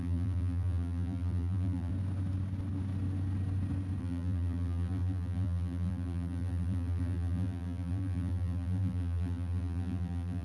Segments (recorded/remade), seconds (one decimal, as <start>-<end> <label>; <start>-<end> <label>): 0.0-1.9 remade; 1.9-4.0 recorded; 4.0-10.4 remade

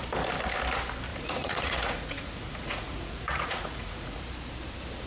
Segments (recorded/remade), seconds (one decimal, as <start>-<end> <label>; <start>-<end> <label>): 0.0-1.1 recorded; 1.1-4.2 remade; 4.2-5.1 recorded